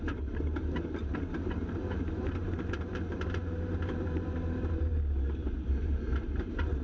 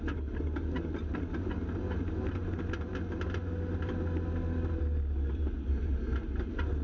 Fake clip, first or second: first